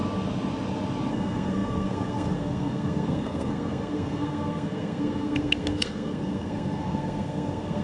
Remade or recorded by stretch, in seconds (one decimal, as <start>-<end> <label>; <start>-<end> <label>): 0.0-1.1 recorded; 1.1-7.8 remade